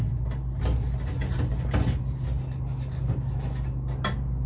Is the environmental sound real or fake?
real